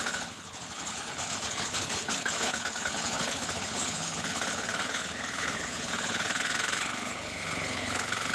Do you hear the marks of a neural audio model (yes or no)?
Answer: yes